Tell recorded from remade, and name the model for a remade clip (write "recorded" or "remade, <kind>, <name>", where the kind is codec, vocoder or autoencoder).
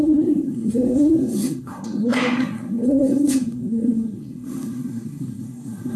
remade, codec, SNAC